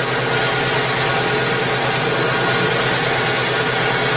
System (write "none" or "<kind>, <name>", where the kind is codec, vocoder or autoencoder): none